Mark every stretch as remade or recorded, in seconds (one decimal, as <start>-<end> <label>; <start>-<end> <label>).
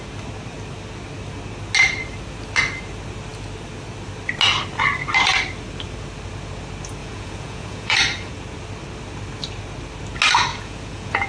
0.0-7.0 recorded; 7.0-8.3 remade; 8.3-10.5 recorded; 10.5-11.3 remade